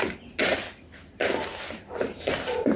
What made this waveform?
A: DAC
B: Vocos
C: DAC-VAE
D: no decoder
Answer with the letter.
D